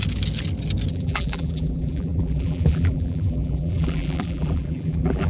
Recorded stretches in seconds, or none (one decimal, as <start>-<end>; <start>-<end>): 0.0-0.9